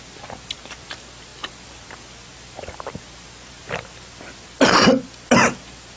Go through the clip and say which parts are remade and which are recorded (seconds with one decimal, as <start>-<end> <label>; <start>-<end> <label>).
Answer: 0.0-6.0 recorded